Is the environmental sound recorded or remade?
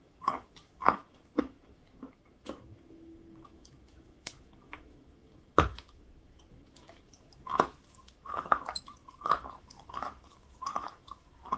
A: remade